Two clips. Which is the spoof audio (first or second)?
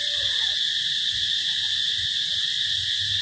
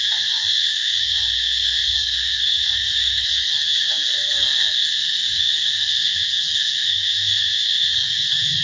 second